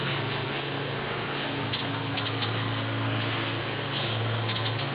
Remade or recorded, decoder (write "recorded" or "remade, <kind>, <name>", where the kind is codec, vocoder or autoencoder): remade, codec, SNAC